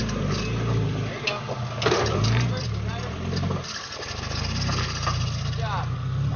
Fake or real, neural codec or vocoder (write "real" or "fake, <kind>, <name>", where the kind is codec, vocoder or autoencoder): real